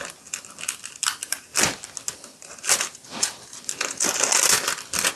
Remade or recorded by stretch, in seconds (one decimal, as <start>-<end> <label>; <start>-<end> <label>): 0.0-5.2 recorded